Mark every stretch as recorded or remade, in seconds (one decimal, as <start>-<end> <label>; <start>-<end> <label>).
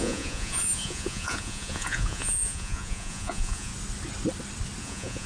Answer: 0.0-3.7 remade; 3.7-4.8 recorded; 4.8-5.3 remade